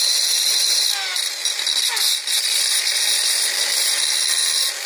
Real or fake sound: real